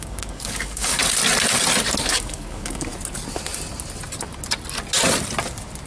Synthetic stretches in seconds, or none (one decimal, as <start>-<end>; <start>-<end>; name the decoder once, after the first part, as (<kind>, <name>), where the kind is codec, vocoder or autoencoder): 0.0-1.0 (codec, DAC); 2.0-2.9